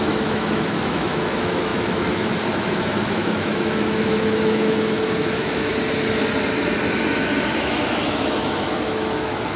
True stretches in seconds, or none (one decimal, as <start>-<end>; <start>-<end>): 5.7-7.5